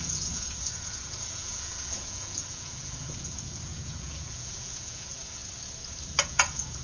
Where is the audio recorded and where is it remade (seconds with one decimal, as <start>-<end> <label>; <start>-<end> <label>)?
0.0-5.4 remade; 5.4-6.2 recorded; 6.2-6.8 remade